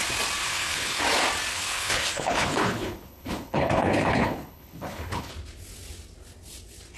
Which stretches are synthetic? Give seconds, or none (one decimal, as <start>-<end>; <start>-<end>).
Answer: 0.4-1.0; 1.5-5.3